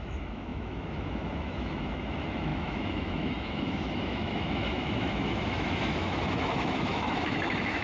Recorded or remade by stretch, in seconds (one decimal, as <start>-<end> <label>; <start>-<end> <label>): 0.0-7.8 remade